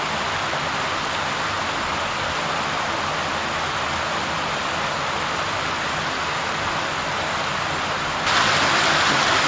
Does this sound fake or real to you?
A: real